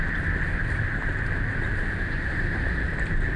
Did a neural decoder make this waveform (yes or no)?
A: no